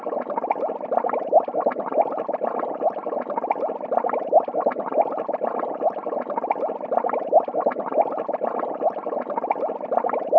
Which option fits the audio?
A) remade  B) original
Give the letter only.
B